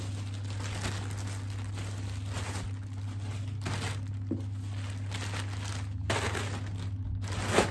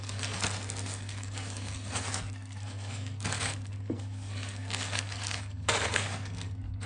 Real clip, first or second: first